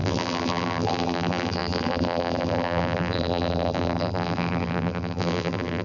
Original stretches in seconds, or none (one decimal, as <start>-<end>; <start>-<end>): none